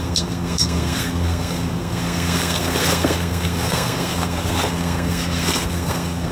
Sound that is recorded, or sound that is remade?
remade